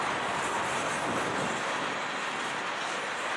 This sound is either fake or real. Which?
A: real